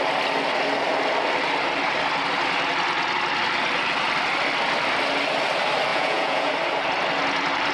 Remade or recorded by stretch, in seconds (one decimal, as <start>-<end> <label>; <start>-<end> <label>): 0.0-5.9 recorded; 5.9-6.5 remade; 6.5-7.7 recorded